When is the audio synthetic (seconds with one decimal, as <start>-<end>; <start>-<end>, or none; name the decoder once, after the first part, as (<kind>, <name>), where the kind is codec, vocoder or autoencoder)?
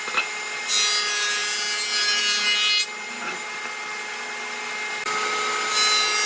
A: none